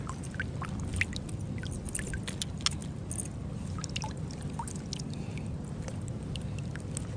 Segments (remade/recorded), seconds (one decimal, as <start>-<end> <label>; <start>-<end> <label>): 0.0-7.2 recorded